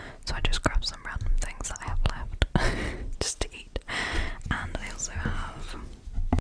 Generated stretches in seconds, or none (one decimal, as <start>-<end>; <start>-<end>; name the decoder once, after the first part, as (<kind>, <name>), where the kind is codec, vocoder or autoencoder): 2.6-4.3 (vocoder, WaveNeXt)